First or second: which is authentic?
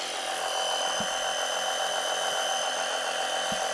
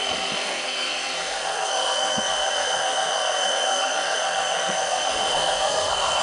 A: first